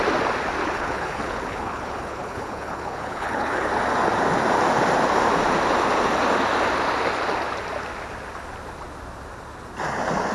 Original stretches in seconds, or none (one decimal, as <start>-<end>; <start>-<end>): 0.0-0.6; 3.7-10.3